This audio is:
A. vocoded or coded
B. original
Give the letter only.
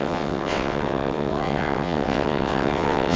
A